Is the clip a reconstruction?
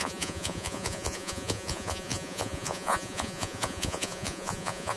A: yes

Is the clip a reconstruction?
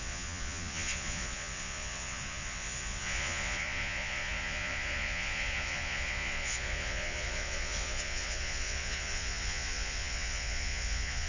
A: yes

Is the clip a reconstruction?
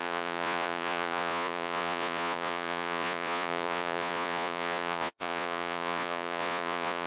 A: yes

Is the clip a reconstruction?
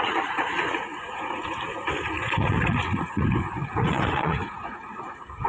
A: yes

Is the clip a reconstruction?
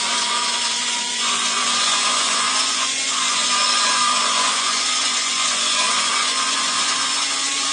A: yes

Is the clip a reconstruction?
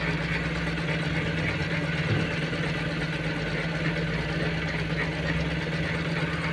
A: no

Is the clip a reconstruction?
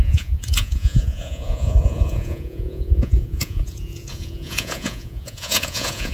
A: yes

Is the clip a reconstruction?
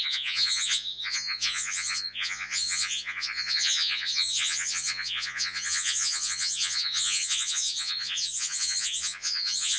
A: yes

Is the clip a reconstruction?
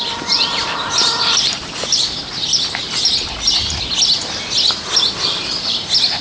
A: no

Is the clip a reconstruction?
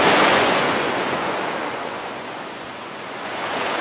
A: yes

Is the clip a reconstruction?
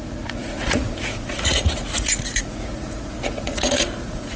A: yes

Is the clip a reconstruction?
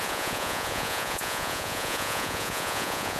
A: yes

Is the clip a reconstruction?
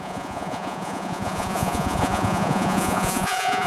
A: yes